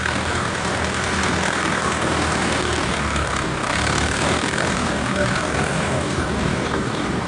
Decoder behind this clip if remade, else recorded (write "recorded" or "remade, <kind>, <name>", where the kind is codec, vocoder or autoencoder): remade, codec, DAC